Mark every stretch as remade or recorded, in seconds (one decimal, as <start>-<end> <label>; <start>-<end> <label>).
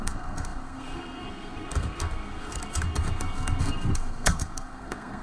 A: 0.0-5.2 remade